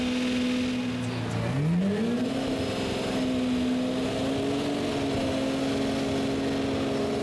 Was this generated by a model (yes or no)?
no